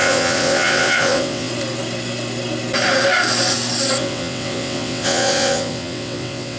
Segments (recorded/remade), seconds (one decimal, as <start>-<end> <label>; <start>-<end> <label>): 0.0-1.5 remade; 1.5-4.0 recorded; 4.0-6.6 remade